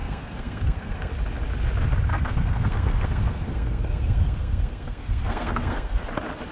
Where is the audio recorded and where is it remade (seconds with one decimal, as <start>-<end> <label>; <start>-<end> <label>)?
0.0-1.1 remade; 1.1-2.1 recorded; 2.1-6.0 remade; 6.0-6.5 recorded